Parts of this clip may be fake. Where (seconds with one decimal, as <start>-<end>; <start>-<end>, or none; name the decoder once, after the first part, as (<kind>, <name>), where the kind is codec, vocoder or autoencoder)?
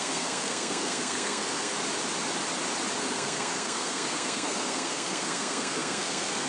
0.0-1.7 (codec, SNAC); 3.0-6.5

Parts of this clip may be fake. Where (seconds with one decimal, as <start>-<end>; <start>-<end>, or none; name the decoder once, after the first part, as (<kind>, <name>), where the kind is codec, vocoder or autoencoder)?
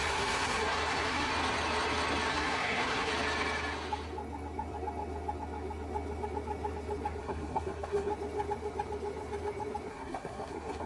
0.0-1.3 (codec, SNAC); 2.3-3.1; 7.2-8.1; 9.9-10.9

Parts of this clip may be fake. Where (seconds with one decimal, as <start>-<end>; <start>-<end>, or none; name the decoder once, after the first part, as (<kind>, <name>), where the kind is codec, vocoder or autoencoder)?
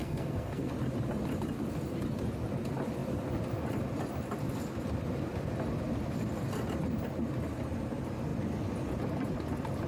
0.0-0.7 (codec, SNAC)